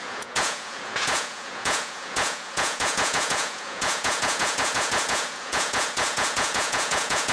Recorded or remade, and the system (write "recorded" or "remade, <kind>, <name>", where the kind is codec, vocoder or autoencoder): remade, vocoder, Vocos